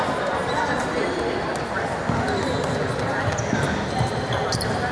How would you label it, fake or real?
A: real